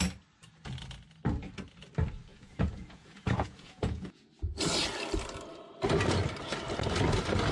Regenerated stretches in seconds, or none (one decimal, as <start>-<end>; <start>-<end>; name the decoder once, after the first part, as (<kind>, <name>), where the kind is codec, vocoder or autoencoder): 2.3-4.3 (vocoder, Vocos)